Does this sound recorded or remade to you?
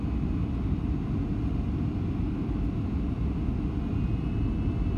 recorded